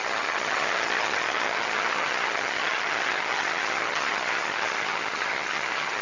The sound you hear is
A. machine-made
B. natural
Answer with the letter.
A